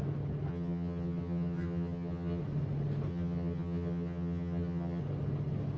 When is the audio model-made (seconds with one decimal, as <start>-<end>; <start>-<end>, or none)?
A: 0.5-2.4; 3.1-5.0